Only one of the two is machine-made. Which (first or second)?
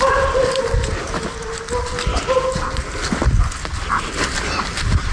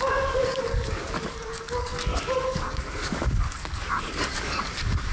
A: second